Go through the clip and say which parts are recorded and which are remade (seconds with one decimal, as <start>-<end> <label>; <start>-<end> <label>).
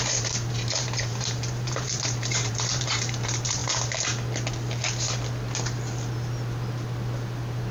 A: 0.0-3.6 remade; 3.6-7.7 recorded